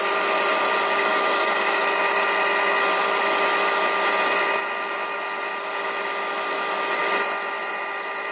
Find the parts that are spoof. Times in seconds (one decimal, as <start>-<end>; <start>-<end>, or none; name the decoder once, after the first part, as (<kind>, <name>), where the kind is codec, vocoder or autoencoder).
1.1-1.8 (codec, DAC)